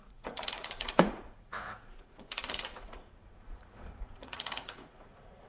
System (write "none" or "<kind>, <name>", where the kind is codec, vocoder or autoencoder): vocoder, Vocos